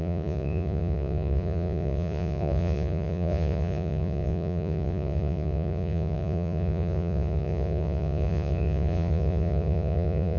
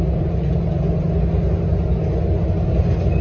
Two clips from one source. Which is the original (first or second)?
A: second